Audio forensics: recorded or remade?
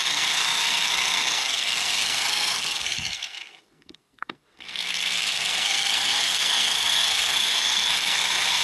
remade